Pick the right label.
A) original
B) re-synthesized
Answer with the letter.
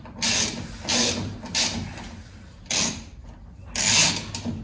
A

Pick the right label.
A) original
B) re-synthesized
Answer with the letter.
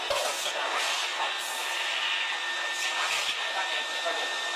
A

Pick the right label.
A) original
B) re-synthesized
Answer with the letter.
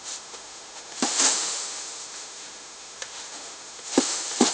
B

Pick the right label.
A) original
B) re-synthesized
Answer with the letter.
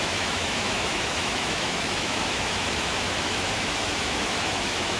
B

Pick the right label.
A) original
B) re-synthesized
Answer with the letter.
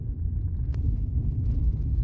A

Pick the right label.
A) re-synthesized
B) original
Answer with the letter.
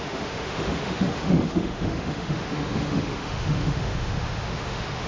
A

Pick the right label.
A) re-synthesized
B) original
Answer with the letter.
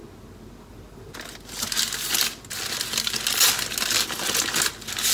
B